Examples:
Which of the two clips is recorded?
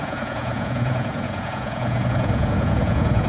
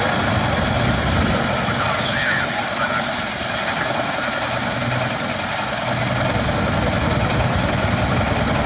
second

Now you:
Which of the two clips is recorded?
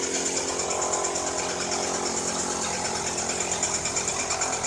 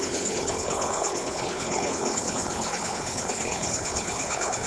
first